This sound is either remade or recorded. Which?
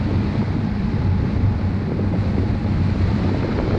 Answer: recorded